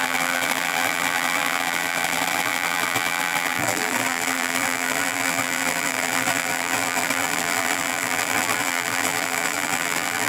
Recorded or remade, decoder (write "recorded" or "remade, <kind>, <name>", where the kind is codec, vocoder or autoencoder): remade, vocoder, BigVGAN v2